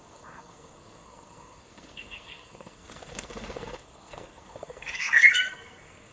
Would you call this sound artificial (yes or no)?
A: yes